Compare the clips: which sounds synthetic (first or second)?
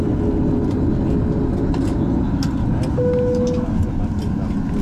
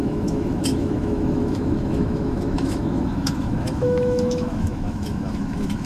second